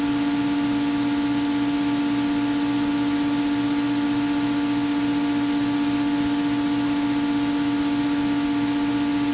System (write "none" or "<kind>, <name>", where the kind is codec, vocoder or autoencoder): none